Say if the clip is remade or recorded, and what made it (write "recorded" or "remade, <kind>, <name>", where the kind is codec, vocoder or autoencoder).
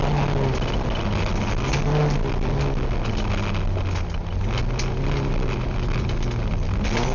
recorded